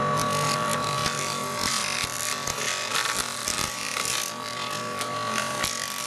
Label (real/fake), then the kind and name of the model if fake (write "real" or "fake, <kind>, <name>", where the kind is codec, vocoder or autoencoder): real